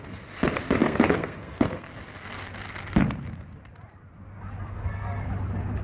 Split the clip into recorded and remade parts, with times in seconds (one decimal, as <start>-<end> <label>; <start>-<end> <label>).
0.0-0.8 recorded; 0.8-1.9 remade; 1.9-4.7 recorded; 4.7-5.3 remade; 5.3-5.8 recorded